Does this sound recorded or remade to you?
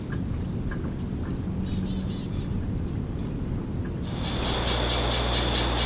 recorded